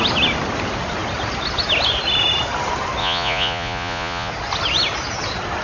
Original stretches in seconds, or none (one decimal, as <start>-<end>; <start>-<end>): 0.0-3.0; 4.3-5.6